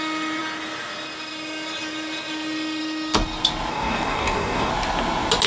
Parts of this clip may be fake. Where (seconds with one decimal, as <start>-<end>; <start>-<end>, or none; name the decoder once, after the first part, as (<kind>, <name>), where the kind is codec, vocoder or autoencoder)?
3.7-4.7 (codec, DAC)